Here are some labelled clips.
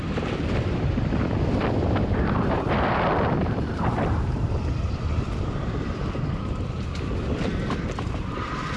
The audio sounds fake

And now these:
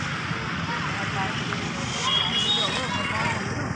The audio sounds real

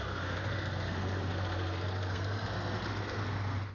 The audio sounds fake